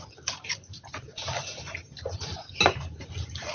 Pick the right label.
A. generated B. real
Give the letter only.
B